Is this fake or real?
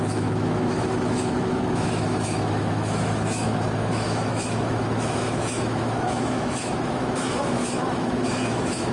fake